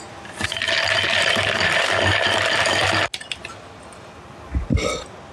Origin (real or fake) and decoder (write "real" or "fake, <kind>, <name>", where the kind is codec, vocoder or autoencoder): real